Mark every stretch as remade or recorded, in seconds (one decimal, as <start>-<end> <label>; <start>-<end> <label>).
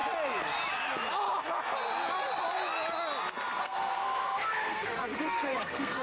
0.0-3.6 recorded; 3.6-6.0 remade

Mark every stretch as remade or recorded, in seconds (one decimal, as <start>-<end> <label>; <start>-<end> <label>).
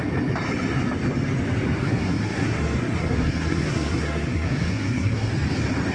0.0-1.8 recorded; 1.8-5.3 remade; 5.3-5.9 recorded